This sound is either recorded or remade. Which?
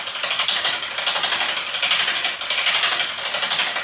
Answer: recorded